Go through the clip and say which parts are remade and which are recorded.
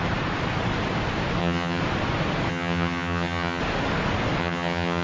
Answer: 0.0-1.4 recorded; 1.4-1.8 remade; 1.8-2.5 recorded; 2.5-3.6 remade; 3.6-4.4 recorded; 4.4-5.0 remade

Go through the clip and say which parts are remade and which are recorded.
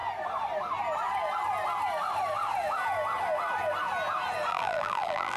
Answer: 0.0-4.5 recorded; 4.5-5.4 remade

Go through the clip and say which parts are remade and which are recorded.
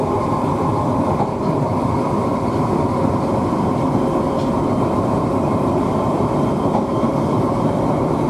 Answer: 0.0-8.3 remade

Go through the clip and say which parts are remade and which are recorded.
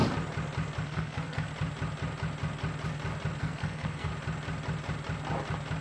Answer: 0.0-0.8 recorded; 0.8-1.5 remade; 1.5-3.4 recorded; 3.4-4.1 remade; 4.1-5.8 recorded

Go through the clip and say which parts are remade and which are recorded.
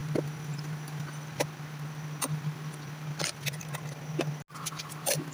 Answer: 0.0-5.3 recorded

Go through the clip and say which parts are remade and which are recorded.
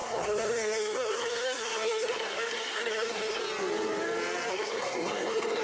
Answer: 0.0-3.4 remade; 3.4-4.5 recorded; 4.5-5.6 remade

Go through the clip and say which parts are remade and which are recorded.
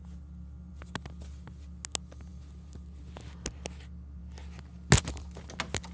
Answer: 0.0-5.9 recorded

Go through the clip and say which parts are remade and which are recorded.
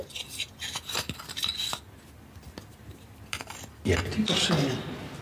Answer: 0.0-5.2 recorded